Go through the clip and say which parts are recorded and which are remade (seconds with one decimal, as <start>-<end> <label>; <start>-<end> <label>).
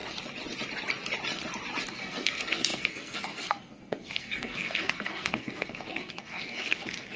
0.0-1.9 recorded; 1.9-7.2 remade